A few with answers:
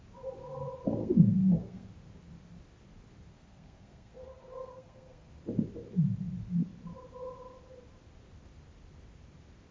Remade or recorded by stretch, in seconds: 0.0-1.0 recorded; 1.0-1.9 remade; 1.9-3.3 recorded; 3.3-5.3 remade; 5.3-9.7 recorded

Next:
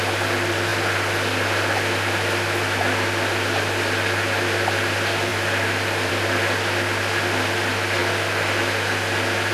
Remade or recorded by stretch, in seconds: 0.0-9.5 recorded

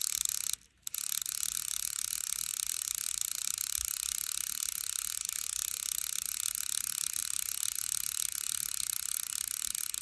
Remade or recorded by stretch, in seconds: 0.0-10.0 recorded